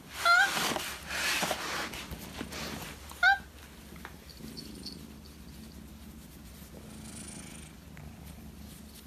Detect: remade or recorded recorded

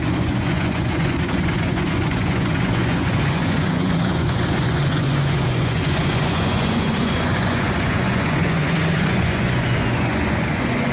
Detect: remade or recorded remade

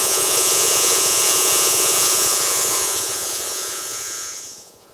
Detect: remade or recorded remade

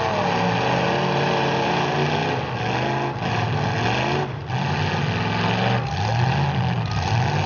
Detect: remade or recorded recorded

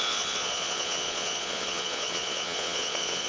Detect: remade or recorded remade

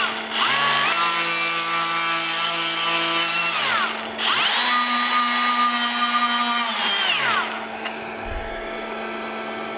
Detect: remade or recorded recorded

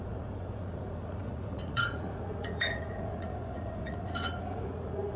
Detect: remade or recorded remade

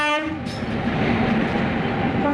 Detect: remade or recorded recorded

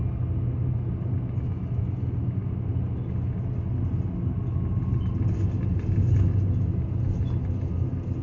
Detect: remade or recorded recorded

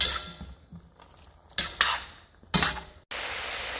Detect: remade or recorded recorded